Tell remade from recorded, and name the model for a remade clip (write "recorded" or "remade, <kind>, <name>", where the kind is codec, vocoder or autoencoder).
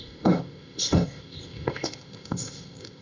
remade, codec, ZipCodec